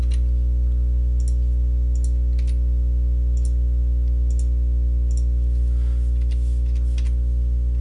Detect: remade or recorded recorded